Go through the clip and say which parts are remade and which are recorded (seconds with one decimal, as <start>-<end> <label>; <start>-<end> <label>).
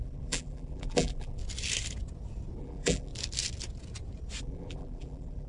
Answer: 0.0-1.4 remade; 1.4-2.6 recorded; 2.6-3.1 remade; 3.1-4.4 recorded; 4.4-5.5 remade